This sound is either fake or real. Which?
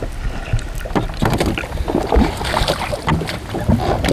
real